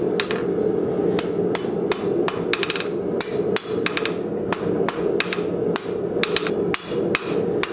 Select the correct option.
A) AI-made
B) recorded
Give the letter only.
B